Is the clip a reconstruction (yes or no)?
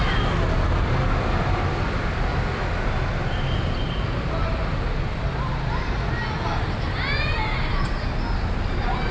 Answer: no